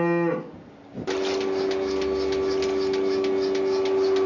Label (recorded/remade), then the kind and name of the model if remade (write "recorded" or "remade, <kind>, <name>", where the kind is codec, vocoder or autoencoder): recorded